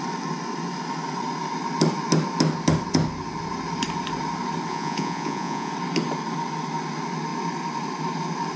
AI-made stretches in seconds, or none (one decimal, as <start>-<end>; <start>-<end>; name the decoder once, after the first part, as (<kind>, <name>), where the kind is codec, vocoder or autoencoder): 4.7-5.7 (vocoder, Vocos)